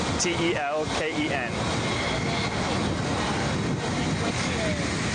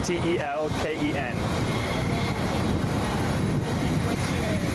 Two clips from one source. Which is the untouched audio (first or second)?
first